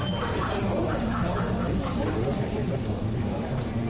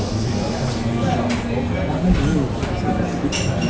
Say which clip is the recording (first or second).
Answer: second